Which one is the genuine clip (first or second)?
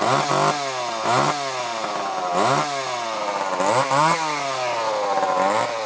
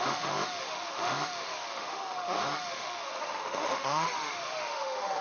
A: first